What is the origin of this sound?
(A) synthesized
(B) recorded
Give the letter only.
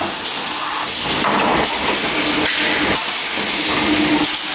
B